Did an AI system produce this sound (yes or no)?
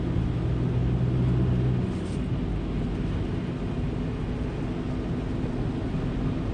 no